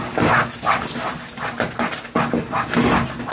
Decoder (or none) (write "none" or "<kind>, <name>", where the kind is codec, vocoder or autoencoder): none